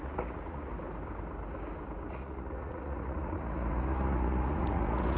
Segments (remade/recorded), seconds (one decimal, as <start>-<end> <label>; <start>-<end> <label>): 0.0-0.7 remade; 0.7-2.1 recorded; 2.1-5.2 remade